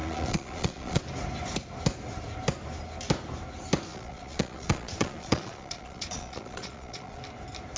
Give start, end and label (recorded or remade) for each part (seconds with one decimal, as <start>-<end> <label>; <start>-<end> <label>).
0.0-1.0 remade; 1.0-3.9 recorded; 3.9-7.2 remade; 7.2-7.8 recorded